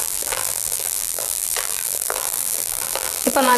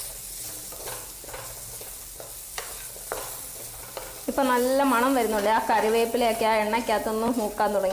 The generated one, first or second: first